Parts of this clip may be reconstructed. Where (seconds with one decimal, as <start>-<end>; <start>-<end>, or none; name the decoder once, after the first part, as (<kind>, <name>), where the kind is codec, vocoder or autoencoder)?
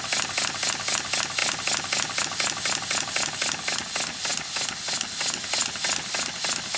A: none